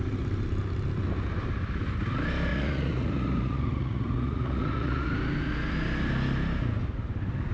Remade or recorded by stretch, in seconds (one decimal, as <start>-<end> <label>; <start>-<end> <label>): 0.0-2.5 recorded; 2.5-5.1 remade; 5.1-7.5 recorded